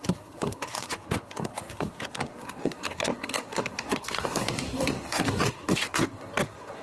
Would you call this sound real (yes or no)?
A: no